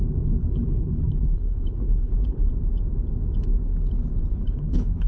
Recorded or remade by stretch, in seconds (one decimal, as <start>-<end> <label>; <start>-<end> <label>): 0.0-0.4 recorded; 0.4-2.5 remade; 2.5-4.3 recorded; 4.3-5.1 remade